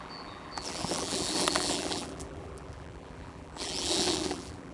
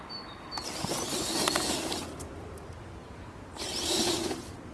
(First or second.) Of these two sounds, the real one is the second